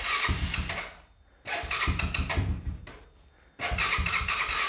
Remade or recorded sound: recorded